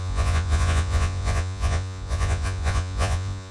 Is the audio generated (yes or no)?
yes